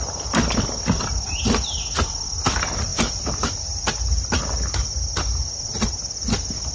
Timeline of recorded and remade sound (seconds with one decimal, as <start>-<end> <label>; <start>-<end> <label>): 0.0-2.9 recorded; 2.9-4.4 remade; 4.4-6.7 recorded